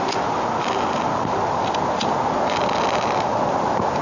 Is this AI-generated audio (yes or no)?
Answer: no